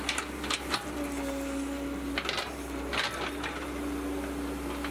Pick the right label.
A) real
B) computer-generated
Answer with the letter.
A